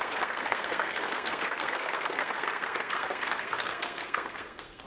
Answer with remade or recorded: remade